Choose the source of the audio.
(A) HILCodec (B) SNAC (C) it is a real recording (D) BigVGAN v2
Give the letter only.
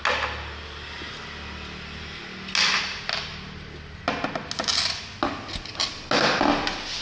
C